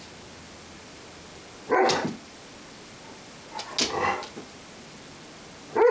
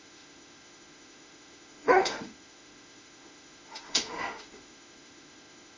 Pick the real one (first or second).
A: first